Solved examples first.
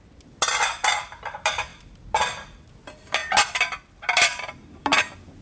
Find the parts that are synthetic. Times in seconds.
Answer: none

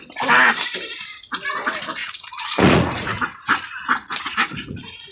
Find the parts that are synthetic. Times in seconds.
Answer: 2.0-5.1 (vocoder, Vocos)

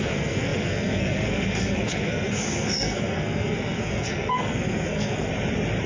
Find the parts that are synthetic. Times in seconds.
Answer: 0.0-5.3 (codec, SNAC)

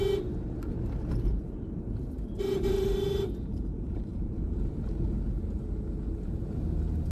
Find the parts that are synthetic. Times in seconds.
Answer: 1.3-5.6 (vocoder, BigVGAN v2)

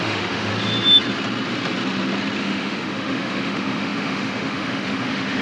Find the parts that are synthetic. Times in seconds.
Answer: 0.0-0.5 (autoencoder, DAC-VAE); 2.4-5.4

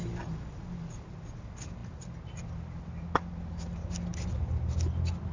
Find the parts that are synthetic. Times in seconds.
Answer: none

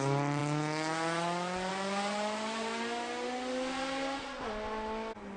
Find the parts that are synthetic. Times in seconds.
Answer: none

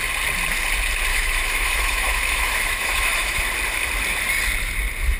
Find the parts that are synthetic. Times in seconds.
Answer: 1.1-3.4 (autoencoder, DAC-VAE)